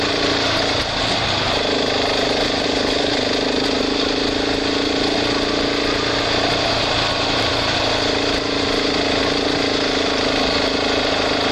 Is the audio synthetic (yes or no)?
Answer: no